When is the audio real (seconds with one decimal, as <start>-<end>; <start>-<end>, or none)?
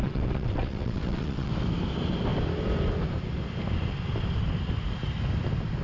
1.5-5.8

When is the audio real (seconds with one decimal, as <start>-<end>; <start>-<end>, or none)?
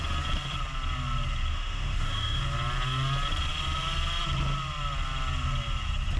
0.0-1.5; 2.4-6.2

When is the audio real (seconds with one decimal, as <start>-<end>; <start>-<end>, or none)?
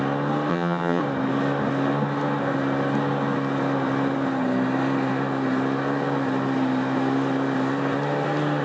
0.0-0.5; 1.0-8.6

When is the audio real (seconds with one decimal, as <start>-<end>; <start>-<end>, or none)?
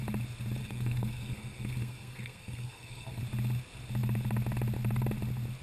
0.0-0.6; 3.2-5.6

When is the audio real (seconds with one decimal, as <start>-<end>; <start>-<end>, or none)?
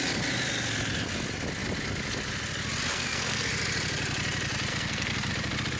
0.0-2.9; 3.5-4.7; 5.3-5.8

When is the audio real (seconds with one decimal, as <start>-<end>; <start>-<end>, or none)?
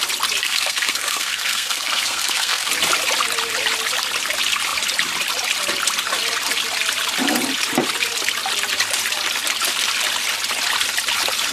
0.0-0.4; 2.7-11.5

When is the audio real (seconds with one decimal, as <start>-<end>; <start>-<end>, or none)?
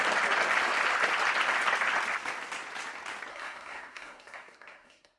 0.0-3.3